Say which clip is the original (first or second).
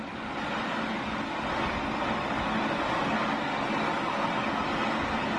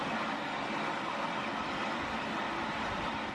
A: first